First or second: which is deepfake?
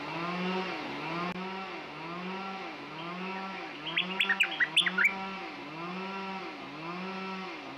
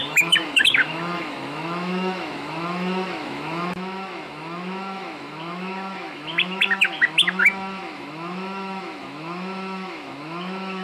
second